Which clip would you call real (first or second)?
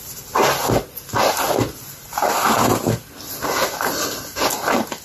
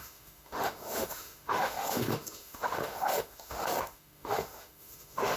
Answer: first